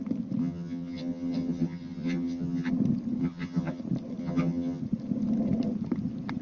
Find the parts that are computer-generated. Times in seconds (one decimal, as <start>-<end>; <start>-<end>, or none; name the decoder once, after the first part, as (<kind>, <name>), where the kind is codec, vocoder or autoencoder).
0.4-2.7 (vocoder, HiFi-GAN); 3.2-3.8; 4.2-4.8